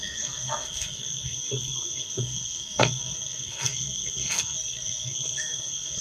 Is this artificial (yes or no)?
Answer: yes